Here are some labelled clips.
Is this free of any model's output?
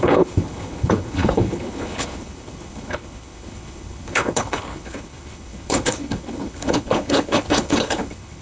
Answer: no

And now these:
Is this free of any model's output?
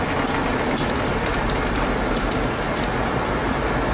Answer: yes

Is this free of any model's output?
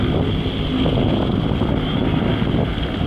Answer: yes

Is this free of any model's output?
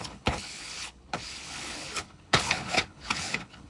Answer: no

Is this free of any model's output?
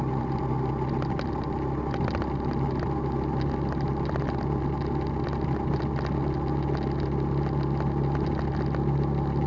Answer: yes